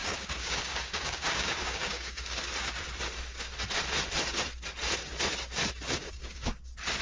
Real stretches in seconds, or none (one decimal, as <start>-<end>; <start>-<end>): 2.4-6.0; 6.5-7.0